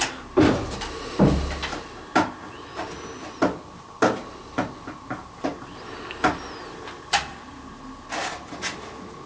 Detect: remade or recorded recorded